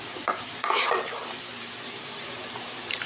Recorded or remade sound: remade